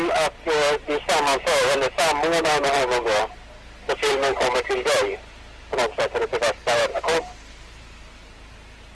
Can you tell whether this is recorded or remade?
recorded